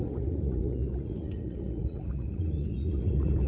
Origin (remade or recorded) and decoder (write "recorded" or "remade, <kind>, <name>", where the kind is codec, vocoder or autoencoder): remade, vocoder, Vocos